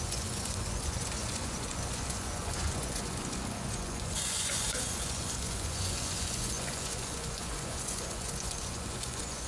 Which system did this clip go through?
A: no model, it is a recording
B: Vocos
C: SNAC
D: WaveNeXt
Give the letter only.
B